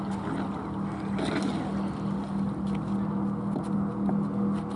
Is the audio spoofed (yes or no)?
no